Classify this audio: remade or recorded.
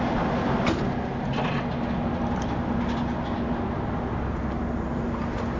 recorded